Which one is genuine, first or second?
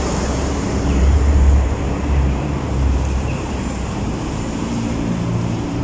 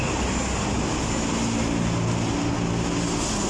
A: second